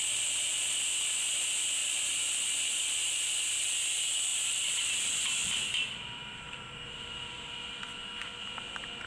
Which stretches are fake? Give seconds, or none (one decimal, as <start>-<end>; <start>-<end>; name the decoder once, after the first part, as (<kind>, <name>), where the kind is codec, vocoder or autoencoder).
1.8-3.2 (vocoder, BigVGAN v2); 4.3-4.9; 5.4-7.8